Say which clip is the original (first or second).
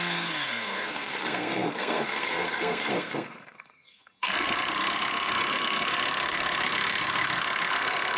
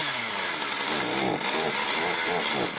second